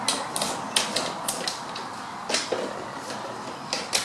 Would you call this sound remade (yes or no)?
no